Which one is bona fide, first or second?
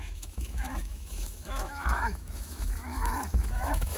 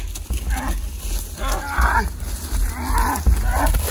second